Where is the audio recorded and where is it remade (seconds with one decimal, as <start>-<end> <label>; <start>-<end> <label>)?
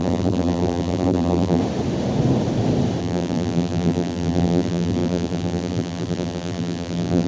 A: 0.0-1.6 remade; 1.6-3.0 recorded; 3.0-7.3 remade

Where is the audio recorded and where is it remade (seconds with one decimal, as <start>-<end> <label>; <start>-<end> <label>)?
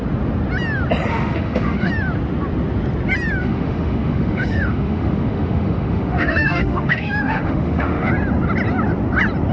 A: 0.0-1.1 recorded; 1.1-1.9 remade; 1.9-3.4 recorded; 3.4-8.1 remade; 8.1-9.5 recorded